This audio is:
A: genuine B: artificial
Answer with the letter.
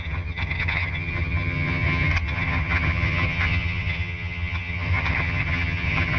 B